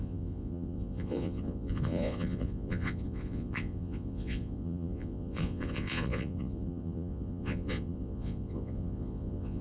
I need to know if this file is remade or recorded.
remade